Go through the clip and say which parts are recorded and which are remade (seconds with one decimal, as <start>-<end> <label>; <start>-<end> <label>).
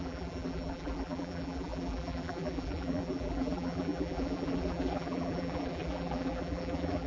0.0-7.1 remade